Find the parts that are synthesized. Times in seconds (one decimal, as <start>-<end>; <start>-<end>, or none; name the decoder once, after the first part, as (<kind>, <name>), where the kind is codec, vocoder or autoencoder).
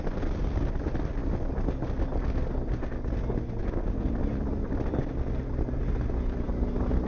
none